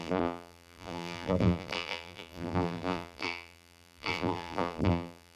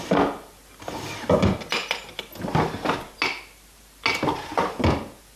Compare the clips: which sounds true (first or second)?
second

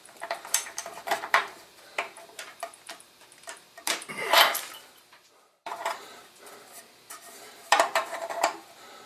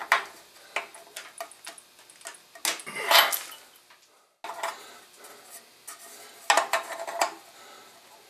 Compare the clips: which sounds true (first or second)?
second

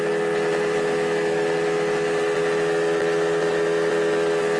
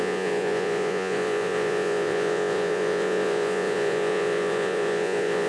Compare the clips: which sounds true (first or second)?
first